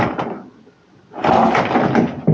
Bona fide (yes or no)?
yes